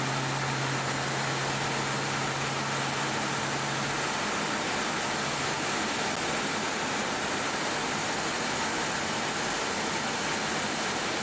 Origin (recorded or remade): recorded